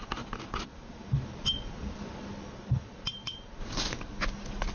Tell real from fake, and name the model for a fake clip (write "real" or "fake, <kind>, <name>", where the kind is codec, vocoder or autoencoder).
real